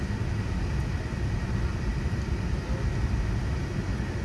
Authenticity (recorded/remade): recorded